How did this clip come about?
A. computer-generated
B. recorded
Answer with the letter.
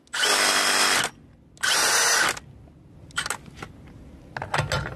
B